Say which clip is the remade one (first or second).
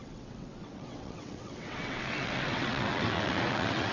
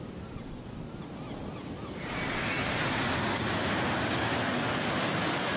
first